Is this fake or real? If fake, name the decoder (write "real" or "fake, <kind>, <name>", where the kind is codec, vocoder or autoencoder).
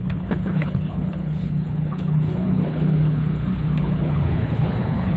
fake, codec, HILCodec